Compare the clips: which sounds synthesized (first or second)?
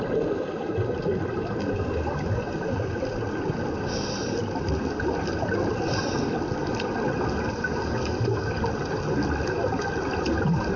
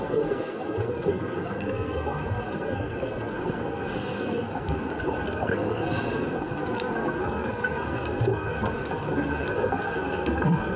second